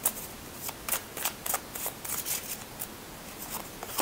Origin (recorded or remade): recorded